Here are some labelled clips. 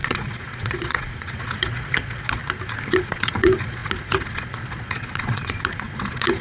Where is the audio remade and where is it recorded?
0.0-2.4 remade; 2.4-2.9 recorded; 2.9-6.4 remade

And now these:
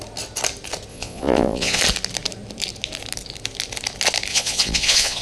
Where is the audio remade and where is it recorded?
0.0-0.9 recorded; 0.9-1.8 remade; 1.8-4.3 recorded; 4.3-5.2 remade